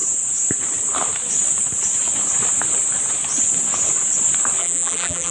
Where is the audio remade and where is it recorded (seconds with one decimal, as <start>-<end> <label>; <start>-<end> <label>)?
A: 0.0-4.6 recorded; 4.6-5.3 remade